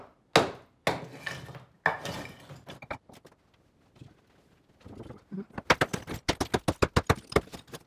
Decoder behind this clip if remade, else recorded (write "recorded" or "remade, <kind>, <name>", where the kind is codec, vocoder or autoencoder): recorded